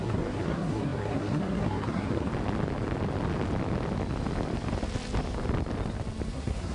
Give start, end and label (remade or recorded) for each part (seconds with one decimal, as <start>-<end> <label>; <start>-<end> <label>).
0.0-2.3 remade; 2.3-6.3 recorded; 6.3-6.7 remade